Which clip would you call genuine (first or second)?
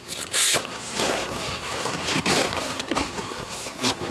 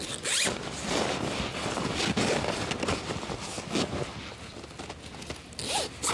second